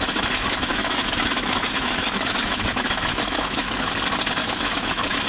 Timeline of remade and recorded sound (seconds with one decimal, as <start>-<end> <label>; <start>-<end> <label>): 0.0-0.7 recorded; 0.7-3.9 remade; 3.9-4.4 recorded; 4.4-5.3 remade